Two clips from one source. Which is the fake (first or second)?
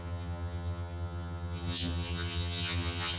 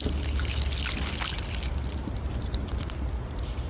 first